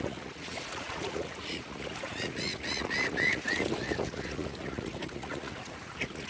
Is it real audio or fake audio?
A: fake